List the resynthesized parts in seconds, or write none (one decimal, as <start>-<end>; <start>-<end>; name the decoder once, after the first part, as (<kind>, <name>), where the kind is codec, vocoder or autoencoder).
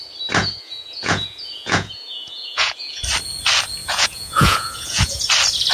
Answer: 0.4-3.0 (vocoder, Vocos); 3.8-5.2